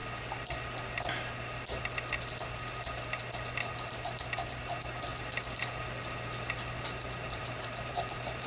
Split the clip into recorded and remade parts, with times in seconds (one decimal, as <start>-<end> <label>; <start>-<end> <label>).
0.0-3.9 recorded; 3.9-5.1 remade; 5.1-6.8 recorded; 6.8-8.5 remade